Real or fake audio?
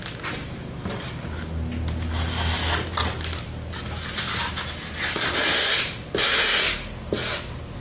real